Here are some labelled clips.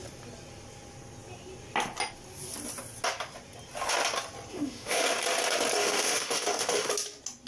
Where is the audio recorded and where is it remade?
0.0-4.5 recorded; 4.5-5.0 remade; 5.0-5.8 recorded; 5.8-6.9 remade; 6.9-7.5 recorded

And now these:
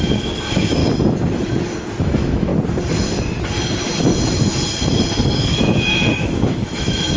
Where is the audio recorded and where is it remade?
0.0-0.8 remade; 0.8-2.0 recorded; 2.0-2.5 remade; 2.5-5.4 recorded; 5.4-7.2 remade

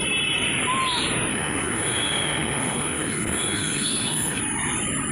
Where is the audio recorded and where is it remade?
0.0-1.3 recorded; 1.3-4.4 remade; 4.4-5.1 recorded

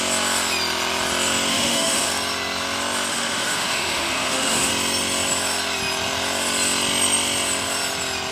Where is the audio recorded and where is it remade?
0.0-1.5 recorded; 1.5-2.1 remade; 2.1-3.1 recorded; 3.1-4.7 remade; 4.7-8.3 recorded

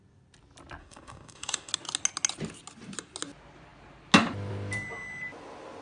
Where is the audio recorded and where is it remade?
0.0-0.8 recorded; 0.8-1.7 remade; 1.7-5.8 recorded